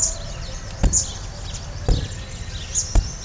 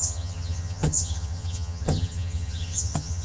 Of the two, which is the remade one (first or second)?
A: second